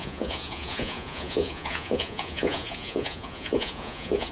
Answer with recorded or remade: remade